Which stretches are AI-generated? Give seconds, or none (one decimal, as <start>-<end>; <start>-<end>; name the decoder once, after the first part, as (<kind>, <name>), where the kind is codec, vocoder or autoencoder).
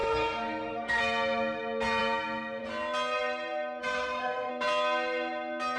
0.0-1.0 (codec, SNAC); 3.8-4.5